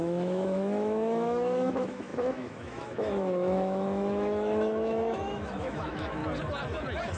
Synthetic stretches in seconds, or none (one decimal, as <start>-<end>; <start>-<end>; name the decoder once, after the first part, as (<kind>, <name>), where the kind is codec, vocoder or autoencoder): 0.0-6.2 (autoencoder, DAC-VAE)